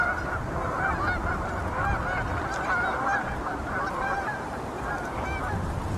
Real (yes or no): yes